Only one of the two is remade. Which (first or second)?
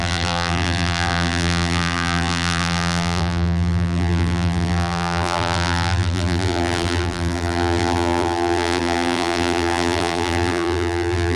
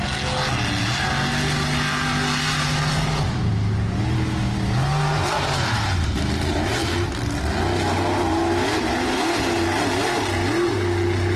first